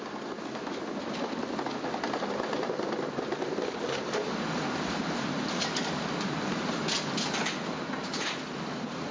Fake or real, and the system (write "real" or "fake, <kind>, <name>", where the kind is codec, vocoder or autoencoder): real